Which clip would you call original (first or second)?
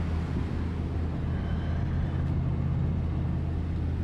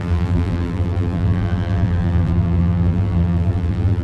first